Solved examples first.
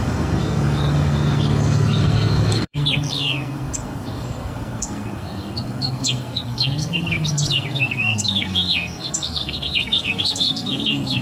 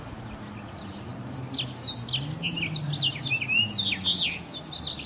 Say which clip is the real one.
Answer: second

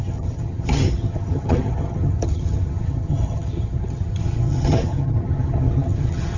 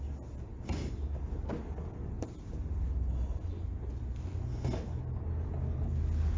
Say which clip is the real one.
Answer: second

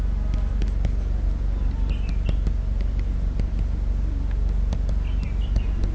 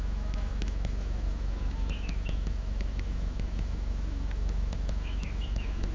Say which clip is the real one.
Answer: first